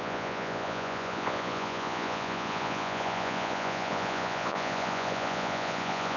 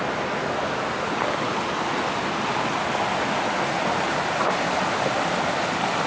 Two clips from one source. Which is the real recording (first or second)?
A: second